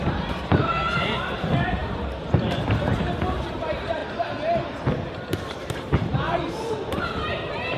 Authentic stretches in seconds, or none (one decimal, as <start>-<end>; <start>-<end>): none